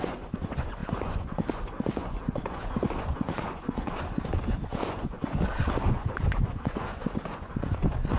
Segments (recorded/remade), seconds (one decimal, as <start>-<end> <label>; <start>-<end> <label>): 0.0-8.2 remade